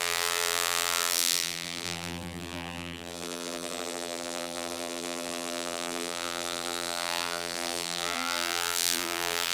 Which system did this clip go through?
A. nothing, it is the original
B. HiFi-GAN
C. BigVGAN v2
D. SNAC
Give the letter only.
C